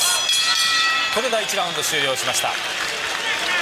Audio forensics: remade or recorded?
remade